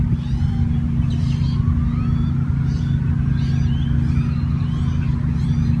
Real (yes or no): yes